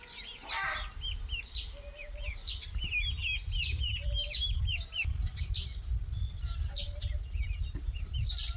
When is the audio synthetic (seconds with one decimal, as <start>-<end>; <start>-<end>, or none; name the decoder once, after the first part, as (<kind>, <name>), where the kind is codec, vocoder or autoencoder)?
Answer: none

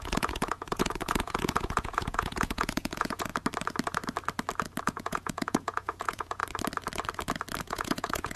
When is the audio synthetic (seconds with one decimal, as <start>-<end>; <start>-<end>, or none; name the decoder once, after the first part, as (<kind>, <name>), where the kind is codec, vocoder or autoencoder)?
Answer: 0.0-3.3 (vocoder, Vocos); 4.8-6.4; 7.6-8.4

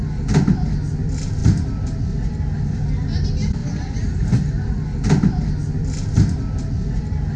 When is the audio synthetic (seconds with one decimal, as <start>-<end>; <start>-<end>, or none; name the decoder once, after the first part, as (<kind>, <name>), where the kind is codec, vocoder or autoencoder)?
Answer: none

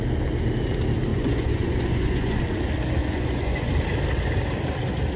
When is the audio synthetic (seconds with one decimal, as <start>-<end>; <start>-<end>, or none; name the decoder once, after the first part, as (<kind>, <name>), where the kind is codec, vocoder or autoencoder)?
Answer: 1.1-2.4 (vocoder, Vocos); 3.0-3.7